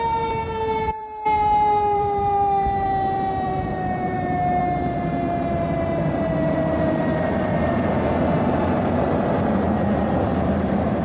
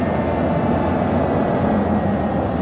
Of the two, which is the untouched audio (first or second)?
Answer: second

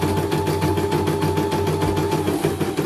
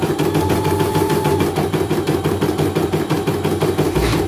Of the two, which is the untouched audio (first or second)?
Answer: first